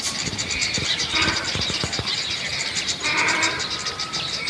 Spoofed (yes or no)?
yes